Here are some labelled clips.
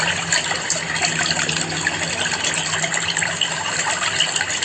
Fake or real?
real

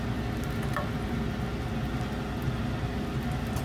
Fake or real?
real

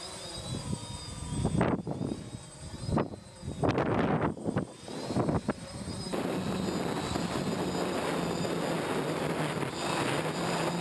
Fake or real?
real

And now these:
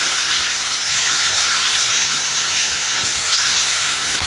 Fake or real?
fake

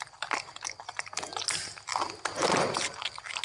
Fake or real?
real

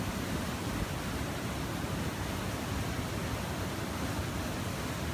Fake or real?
real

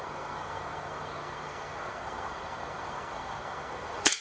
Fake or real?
fake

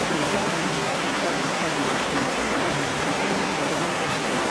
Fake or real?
fake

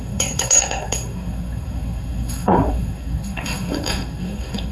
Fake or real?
fake